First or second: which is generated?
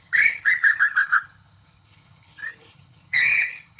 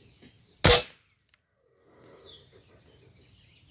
first